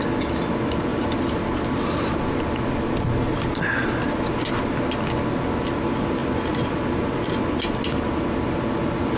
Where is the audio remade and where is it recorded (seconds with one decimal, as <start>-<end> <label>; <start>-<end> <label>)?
0.0-0.9 recorded; 0.9-2.4 remade; 2.4-6.2 recorded; 6.2-7.4 remade; 7.4-9.2 recorded

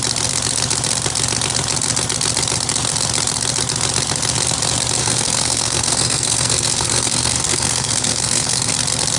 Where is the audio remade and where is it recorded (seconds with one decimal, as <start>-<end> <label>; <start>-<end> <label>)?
0.0-5.0 recorded; 5.0-8.7 remade; 8.7-9.2 recorded

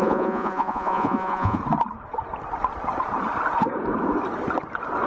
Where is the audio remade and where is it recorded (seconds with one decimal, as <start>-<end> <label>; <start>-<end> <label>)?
0.0-1.6 remade; 1.6-5.1 recorded

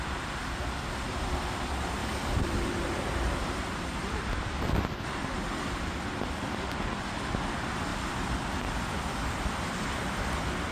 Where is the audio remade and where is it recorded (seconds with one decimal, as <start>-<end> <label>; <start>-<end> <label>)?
0.0-2.0 recorded; 2.0-4.6 remade; 4.6-10.7 recorded

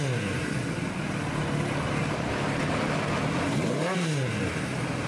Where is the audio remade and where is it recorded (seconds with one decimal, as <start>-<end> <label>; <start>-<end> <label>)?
0.0-2.0 recorded; 2.0-2.6 remade; 2.6-5.1 recorded

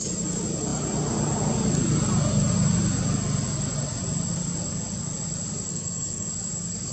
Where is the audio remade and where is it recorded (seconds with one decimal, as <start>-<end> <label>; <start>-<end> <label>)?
0.0-5.7 recorded; 5.7-6.3 remade; 6.3-6.9 recorded

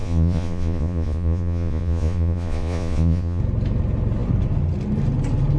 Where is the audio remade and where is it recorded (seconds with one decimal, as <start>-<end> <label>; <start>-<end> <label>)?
0.0-3.4 remade; 3.4-5.6 recorded